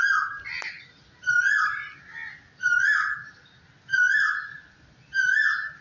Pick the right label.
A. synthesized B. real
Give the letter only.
B